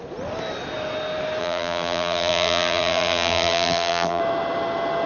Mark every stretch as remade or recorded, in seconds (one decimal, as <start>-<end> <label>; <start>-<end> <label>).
0.0-1.4 recorded; 1.4-4.2 remade; 4.2-5.1 recorded